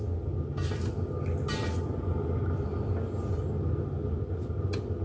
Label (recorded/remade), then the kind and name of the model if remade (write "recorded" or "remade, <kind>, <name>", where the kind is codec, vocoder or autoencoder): recorded